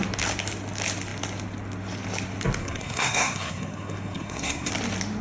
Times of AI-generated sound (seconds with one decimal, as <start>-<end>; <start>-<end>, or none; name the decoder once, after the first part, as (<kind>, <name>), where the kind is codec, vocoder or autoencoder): 2.6-4.7 (codec, SNAC)